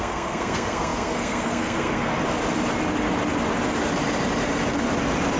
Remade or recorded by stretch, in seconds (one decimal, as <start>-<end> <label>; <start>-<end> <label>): 0.0-2.1 remade; 2.1-5.4 recorded